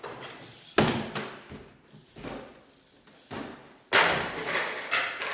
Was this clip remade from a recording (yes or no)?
no